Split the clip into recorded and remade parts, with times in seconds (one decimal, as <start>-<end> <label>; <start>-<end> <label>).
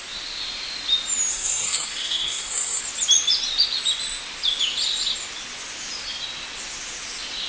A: 0.0-1.3 recorded; 1.3-2.8 remade; 2.8-7.5 recorded